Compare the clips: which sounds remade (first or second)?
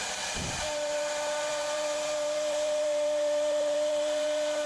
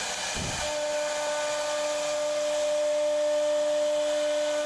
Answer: first